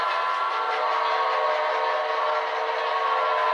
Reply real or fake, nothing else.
real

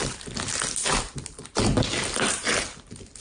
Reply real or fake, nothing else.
real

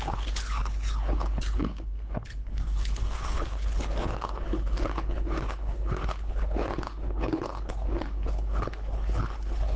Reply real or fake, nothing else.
fake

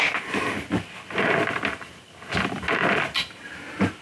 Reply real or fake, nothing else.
real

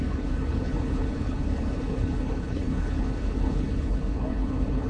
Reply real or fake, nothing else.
fake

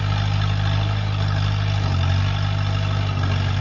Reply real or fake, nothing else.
real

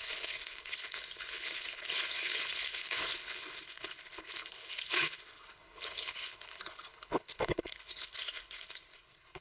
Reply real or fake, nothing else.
fake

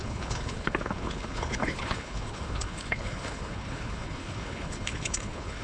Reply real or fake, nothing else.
fake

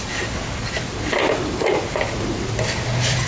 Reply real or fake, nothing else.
real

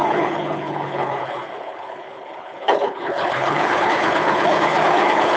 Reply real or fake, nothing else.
fake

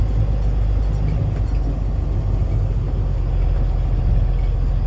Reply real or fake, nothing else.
real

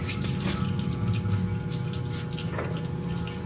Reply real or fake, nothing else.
real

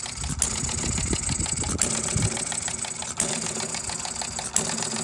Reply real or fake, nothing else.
real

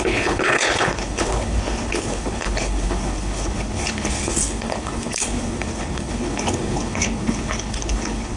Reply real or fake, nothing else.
fake